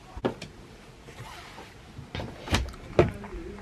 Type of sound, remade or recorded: recorded